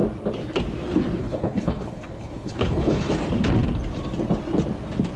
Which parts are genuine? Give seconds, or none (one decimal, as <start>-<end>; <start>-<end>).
0.0-1.2; 3.1-5.2